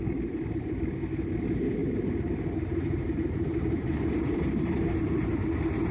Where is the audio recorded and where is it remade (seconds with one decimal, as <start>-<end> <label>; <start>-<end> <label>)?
0.0-1.8 recorded; 1.8-5.3 remade; 5.3-5.9 recorded